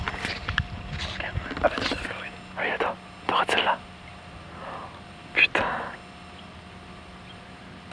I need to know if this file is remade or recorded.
recorded